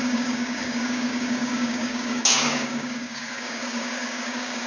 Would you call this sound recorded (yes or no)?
no